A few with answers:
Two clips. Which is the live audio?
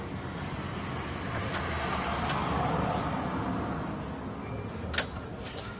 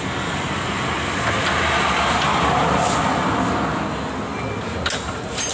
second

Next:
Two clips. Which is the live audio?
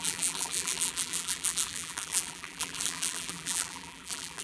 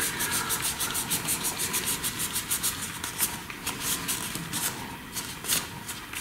second